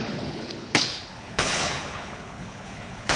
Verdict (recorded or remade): remade